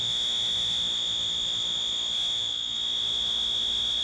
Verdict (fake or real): fake